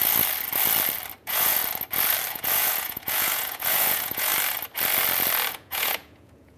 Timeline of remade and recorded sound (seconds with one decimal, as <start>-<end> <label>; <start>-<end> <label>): 0.0-1.2 recorded; 1.2-1.6 remade; 1.6-2.3 recorded; 2.3-4.3 remade; 4.3-5.5 recorded; 5.5-6.6 remade